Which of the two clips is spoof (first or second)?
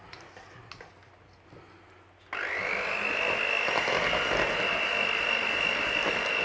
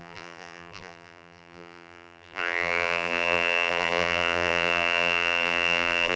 second